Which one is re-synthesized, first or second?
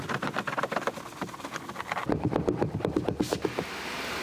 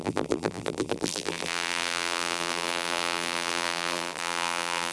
second